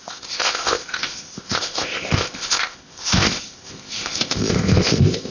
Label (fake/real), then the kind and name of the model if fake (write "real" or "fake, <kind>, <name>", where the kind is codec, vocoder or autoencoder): fake, codec, ZipCodec